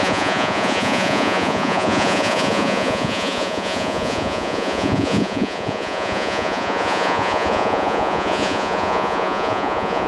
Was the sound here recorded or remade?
remade